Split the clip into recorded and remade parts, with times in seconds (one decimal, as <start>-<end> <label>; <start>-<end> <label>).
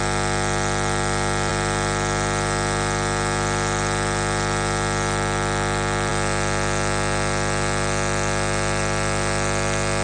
0.0-10.0 recorded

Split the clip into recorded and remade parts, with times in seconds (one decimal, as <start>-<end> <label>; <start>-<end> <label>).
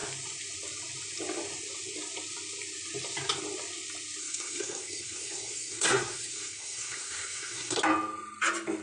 0.0-4.2 recorded; 4.2-7.8 remade; 7.8-8.8 recorded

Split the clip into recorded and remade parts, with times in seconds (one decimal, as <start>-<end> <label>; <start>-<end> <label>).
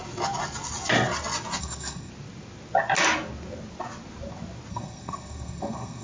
0.0-1.6 recorded; 1.6-2.1 remade; 2.1-4.7 recorded; 4.7-6.0 remade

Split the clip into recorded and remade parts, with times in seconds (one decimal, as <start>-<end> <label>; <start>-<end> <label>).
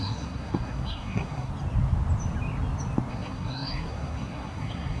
0.0-1.5 remade; 1.5-3.1 recorded; 3.1-5.0 remade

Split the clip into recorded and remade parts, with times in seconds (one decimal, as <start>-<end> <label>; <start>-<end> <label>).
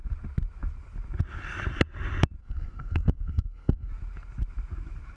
0.0-2.4 recorded; 2.4-3.9 remade; 3.9-5.2 recorded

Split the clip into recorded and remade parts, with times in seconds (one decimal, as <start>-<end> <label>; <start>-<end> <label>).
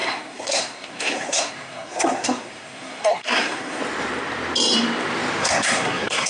0.0-3.8 remade; 3.8-5.4 recorded; 5.4-6.3 remade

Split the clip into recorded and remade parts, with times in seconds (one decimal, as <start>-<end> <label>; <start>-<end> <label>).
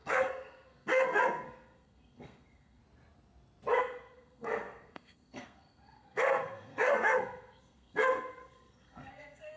0.0-2.8 remade; 2.8-3.8 recorded; 3.8-9.6 remade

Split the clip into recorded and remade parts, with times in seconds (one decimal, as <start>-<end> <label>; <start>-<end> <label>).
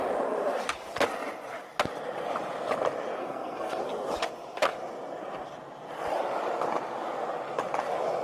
0.0-3.2 recorded; 3.2-3.8 remade; 3.8-8.2 recorded